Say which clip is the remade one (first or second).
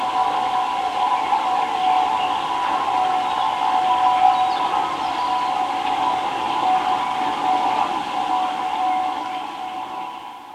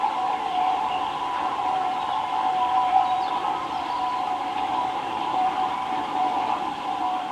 second